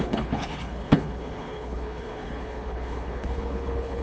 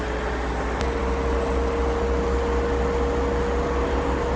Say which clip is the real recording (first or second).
second